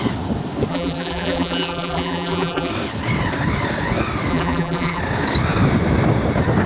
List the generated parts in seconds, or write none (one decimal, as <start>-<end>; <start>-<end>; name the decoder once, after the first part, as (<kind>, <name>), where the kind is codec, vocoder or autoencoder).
0.7-2.7 (vocoder, BigVGAN v2); 4.3-5.0